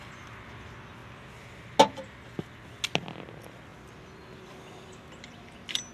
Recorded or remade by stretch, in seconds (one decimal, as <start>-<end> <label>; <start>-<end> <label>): 0.0-5.9 recorded